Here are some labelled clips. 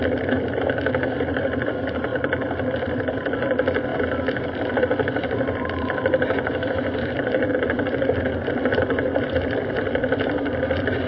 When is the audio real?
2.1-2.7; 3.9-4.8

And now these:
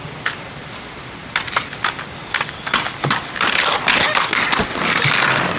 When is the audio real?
0.0-5.6

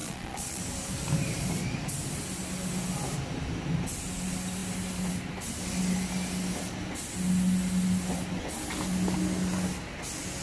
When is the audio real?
0.6-10.4